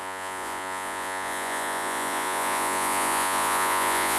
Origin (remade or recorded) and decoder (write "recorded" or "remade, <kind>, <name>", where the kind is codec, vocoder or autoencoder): remade, vocoder, Vocos